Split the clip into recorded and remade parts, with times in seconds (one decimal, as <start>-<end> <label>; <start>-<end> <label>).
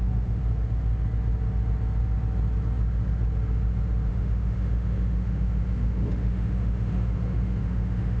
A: 0.0-0.4 remade; 0.4-4.1 recorded; 4.1-8.2 remade